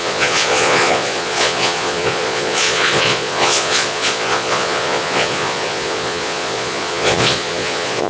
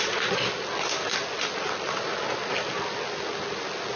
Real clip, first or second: second